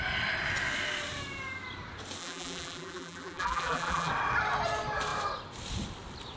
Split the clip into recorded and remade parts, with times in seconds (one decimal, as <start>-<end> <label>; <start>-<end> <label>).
0.0-2.2 recorded; 2.2-4.1 remade; 4.1-6.4 recorded